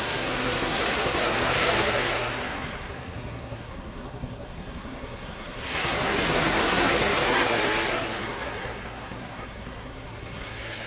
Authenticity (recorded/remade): remade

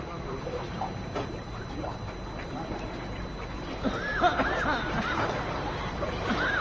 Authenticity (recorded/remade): recorded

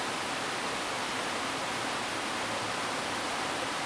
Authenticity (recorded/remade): recorded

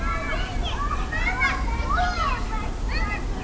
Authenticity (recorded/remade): recorded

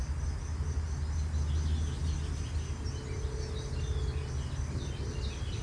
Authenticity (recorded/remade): recorded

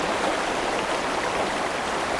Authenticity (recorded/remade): recorded